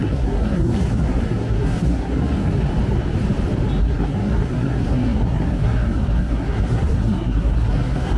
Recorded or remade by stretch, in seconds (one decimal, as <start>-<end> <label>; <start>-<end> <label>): 0.0-2.7 remade; 2.7-3.8 recorded; 3.8-8.2 remade